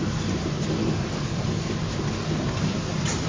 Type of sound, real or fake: real